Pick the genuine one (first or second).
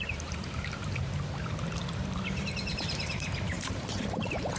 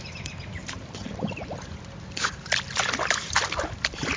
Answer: second